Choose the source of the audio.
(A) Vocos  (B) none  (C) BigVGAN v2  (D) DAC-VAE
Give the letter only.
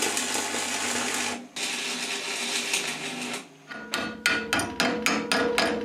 B